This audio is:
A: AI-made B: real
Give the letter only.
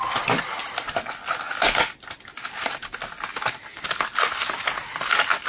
B